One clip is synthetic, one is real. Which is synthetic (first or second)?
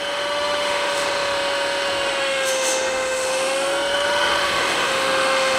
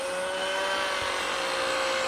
first